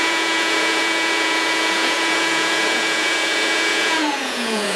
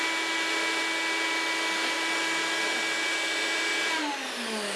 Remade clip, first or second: first